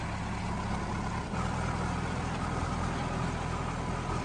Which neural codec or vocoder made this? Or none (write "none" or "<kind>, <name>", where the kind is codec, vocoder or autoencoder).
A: none